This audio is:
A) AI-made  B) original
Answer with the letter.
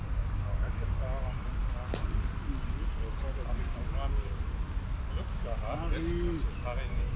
B